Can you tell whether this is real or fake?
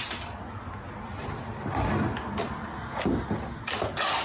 real